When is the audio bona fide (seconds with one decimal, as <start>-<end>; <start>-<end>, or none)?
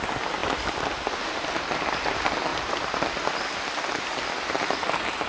0.0-5.3